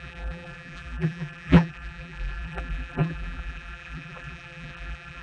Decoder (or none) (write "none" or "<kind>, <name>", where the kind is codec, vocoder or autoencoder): vocoder, BigVGAN v2